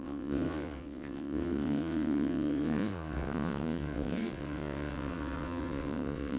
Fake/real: fake